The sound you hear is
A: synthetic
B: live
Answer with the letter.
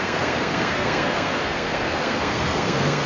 A